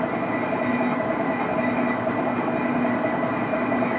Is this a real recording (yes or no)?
yes